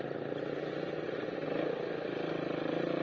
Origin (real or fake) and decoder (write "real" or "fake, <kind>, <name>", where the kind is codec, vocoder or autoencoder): real